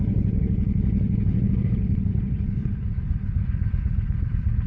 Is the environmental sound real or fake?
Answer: fake